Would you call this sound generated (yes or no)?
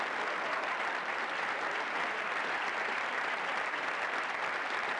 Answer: no